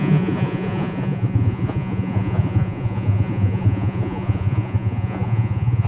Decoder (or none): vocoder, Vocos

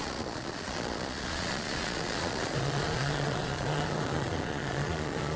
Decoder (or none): vocoder, Vocos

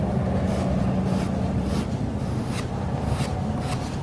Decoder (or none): none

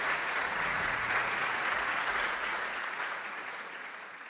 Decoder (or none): vocoder, Vocos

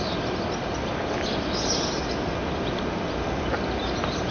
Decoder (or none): none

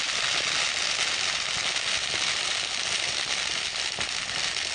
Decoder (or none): none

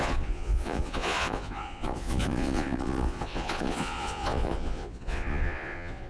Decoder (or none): vocoder, Vocos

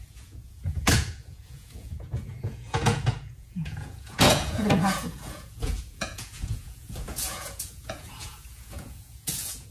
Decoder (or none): vocoder, Vocos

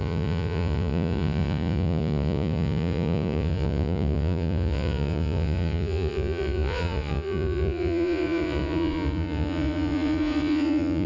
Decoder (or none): vocoder, Vocos